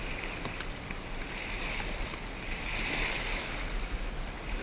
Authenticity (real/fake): real